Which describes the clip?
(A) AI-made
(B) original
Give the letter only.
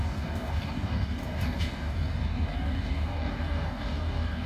A